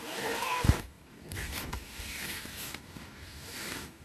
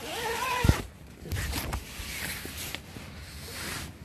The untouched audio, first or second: second